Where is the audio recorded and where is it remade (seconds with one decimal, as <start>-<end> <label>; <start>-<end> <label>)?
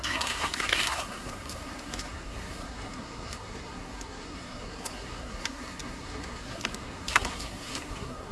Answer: 0.0-8.3 remade